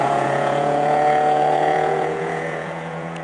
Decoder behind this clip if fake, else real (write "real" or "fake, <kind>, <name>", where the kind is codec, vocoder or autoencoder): fake, vocoder, Vocos